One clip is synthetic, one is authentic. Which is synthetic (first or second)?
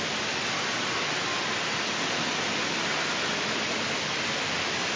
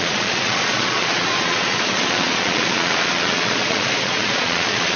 second